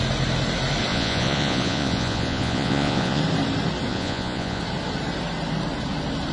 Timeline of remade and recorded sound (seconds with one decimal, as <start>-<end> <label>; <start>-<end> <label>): 0.0-0.9 recorded; 0.9-3.2 remade; 3.2-3.9 recorded; 3.9-4.6 remade; 4.6-6.3 recorded